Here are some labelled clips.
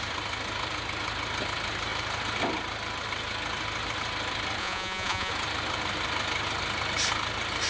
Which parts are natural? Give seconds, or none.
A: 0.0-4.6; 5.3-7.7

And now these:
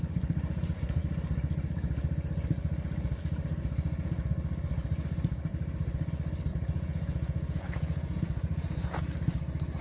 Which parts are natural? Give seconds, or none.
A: 0.0-6.5; 9.0-9.8

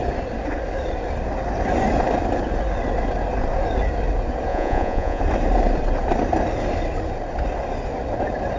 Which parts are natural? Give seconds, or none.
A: 0.0-4.5; 5.2-8.6

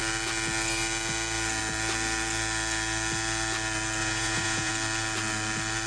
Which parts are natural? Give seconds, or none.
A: 0.0-4.0; 4.7-5.9

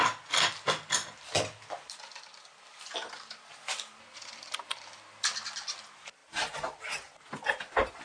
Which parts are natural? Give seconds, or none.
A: 0.0-8.0

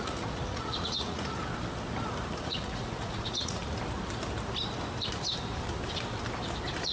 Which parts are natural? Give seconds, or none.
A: 1.4-2.4; 3.6-6.9